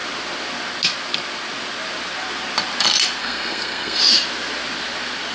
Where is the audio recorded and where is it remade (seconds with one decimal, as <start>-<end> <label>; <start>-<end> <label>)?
0.0-3.2 recorded; 3.2-4.0 remade; 4.0-5.3 recorded

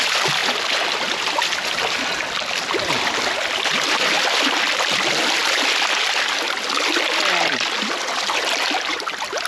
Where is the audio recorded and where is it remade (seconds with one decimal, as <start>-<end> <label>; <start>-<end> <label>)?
0.0-9.5 recorded

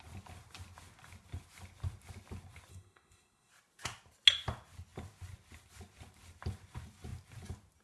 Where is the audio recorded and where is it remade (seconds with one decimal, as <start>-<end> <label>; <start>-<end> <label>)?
0.0-2.7 recorded; 2.7-3.5 remade; 3.5-7.8 recorded

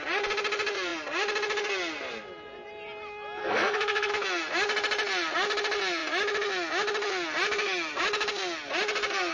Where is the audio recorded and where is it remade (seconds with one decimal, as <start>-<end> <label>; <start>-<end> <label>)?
0.0-3.4 recorded; 3.4-4.1 remade; 4.1-9.3 recorded

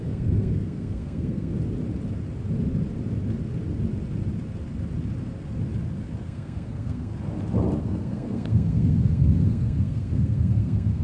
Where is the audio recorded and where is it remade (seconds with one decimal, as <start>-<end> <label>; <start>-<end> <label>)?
0.0-1.5 remade; 1.5-6.2 recorded; 6.2-7.1 remade; 7.1-7.8 recorded; 7.8-11.0 remade

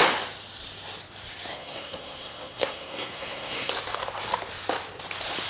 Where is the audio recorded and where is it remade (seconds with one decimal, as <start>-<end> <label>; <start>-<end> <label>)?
0.0-1.5 recorded; 1.5-3.7 remade; 3.7-5.5 recorded

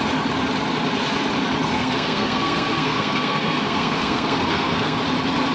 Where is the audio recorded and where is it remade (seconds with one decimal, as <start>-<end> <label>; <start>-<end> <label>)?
0.0-1.7 recorded; 1.7-5.0 remade; 5.0-5.5 recorded

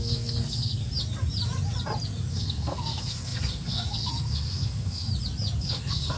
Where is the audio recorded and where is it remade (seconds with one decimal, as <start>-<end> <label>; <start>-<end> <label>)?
0.0-0.9 remade; 0.9-2.3 recorded; 2.3-5.1 remade; 5.1-5.6 recorded; 5.6-6.2 remade